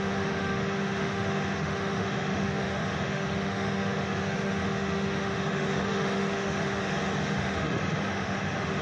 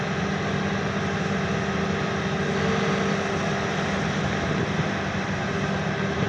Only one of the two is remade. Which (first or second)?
first